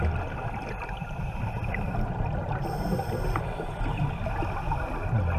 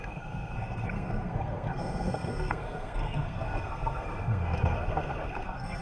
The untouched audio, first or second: first